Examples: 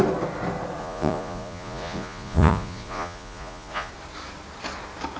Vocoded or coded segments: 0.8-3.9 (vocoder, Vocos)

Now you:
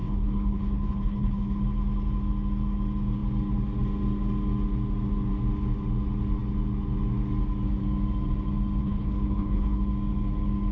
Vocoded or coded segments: 0.0-1.6 (codec, HILCodec); 8.8-9.8

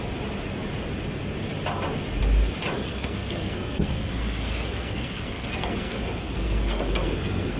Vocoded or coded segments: 2.9-7.6 (codec, SNAC)

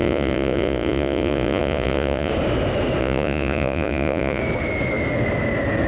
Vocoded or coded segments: 0.0-2.3 (vocoder, Vocos); 3.0-4.4

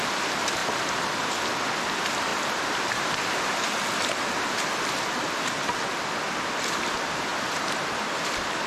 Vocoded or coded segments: 0.6-1.5 (vocoder, BigVGAN v2); 2.3-3.4

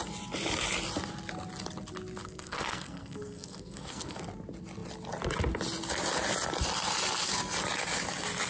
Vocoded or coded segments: 2.2-4.2 (codec, SNAC)